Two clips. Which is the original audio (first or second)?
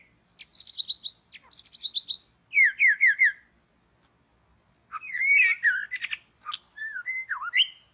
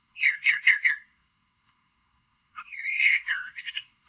first